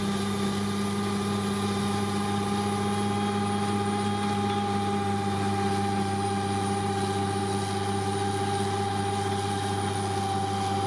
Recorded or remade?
recorded